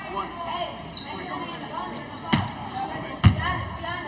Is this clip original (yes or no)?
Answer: yes